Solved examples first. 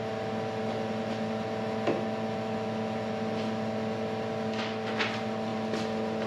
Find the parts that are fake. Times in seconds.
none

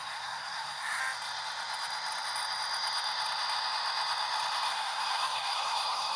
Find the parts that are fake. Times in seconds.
0.0-1.0 (codec, SNAC); 4.7-6.2

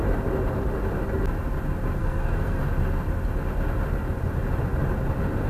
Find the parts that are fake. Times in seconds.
2.0-2.6 (codec, SNAC)

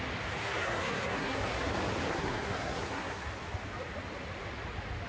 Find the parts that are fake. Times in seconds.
0.4-1.7 (codec, SNAC); 2.1-3.3

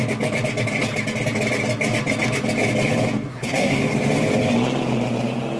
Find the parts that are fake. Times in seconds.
3.3-3.8 (codec, SNAC)

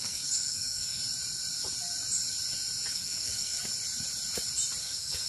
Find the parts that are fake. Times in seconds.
0.0-1.0 (codec, SNAC); 2.9-3.6; 4.8-5.3

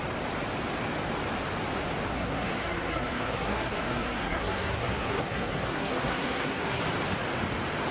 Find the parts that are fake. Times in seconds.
2.1-6.8 (codec, SNAC)